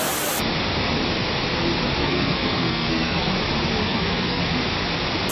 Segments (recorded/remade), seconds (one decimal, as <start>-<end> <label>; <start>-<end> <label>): 0.0-2.0 recorded; 2.0-3.3 remade; 3.3-3.8 recorded; 3.8-4.4 remade; 4.4-5.3 recorded